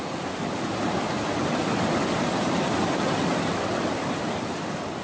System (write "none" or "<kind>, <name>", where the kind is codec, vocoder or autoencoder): none